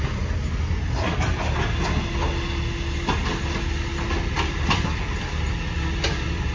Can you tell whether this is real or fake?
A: real